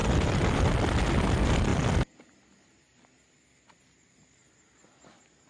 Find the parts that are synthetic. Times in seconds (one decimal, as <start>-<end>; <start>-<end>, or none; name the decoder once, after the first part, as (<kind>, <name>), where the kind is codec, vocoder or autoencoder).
0.0-0.7 (vocoder, BigVGAN v2)